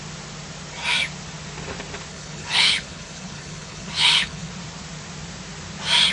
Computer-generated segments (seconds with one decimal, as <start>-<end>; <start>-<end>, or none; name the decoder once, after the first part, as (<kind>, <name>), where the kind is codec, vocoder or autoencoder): 2.1-4.5 (codec, HILCodec)